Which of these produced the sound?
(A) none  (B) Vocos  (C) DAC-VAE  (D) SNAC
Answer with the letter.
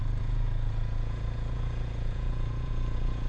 B